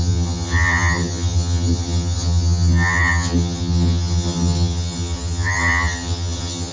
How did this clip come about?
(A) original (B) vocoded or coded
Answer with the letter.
B